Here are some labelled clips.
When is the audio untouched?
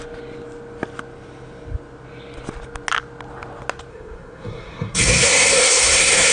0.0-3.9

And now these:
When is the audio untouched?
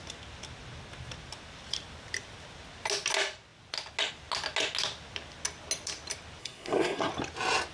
0.0-6.4; 7.1-7.7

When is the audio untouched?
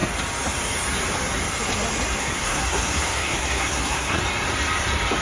0.0-2.2; 4.2-5.2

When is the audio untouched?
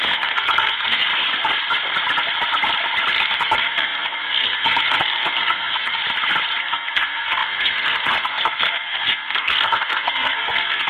1.1-3.1; 6.0-6.6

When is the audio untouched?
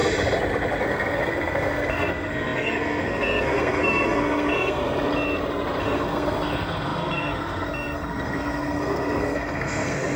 0.0-0.8; 4.8-5.8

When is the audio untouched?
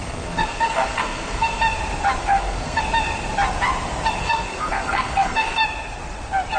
1.6-2.2; 2.8-4.2; 5.6-6.6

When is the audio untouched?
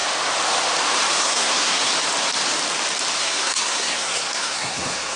0.0-1.2; 1.9-3.2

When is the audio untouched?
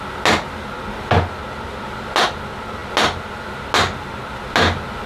0.0-5.1